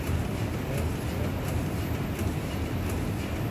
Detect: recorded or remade recorded